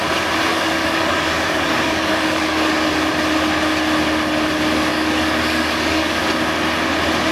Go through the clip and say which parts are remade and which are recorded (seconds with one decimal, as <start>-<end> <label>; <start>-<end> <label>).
0.0-0.5 recorded; 0.5-2.9 remade; 2.9-4.9 recorded; 4.9-6.2 remade; 6.2-7.3 recorded